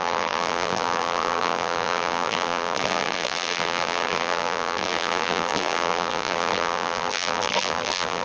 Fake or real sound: fake